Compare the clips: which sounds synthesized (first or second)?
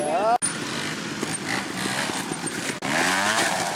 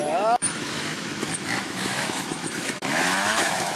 second